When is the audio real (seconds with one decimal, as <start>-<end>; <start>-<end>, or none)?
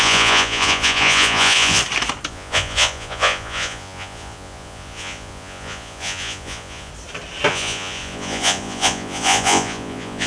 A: 1.8-2.3; 6.9-7.5